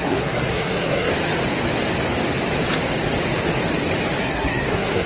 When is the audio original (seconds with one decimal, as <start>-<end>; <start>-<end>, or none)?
1.1-4.2